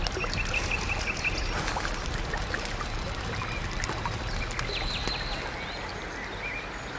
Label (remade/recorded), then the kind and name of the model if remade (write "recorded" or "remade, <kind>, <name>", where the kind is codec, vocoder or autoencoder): recorded